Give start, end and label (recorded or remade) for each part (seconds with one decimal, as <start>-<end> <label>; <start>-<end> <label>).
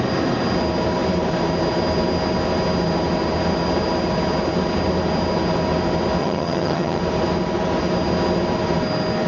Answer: 0.0-6.2 recorded; 6.2-7.0 remade; 7.0-9.3 recorded